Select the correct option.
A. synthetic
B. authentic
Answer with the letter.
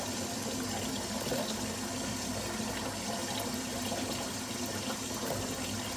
B